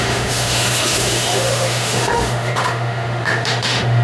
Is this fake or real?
fake